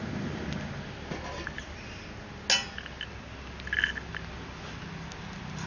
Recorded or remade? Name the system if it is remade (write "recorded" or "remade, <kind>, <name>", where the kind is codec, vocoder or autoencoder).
recorded